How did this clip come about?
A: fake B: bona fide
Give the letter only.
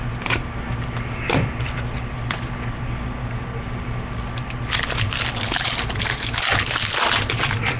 B